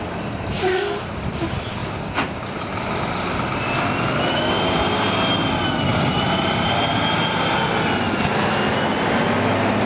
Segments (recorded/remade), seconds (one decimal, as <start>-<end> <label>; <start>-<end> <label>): 0.0-5.9 recorded; 5.9-6.9 remade; 6.9-9.9 recorded